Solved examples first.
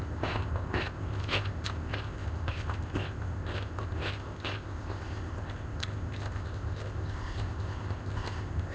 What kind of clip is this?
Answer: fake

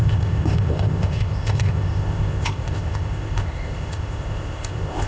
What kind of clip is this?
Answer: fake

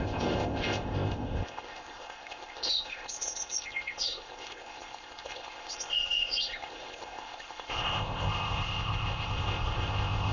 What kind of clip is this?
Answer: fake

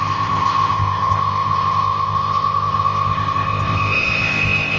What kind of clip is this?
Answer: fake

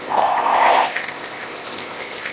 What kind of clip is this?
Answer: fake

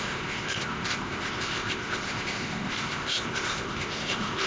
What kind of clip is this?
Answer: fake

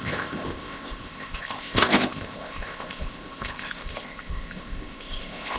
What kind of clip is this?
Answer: fake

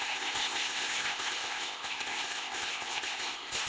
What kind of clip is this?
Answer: fake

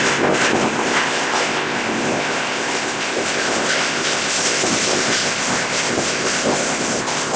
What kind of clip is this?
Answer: fake